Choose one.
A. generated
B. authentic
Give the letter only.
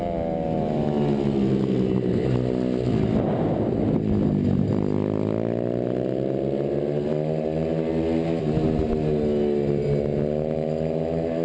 B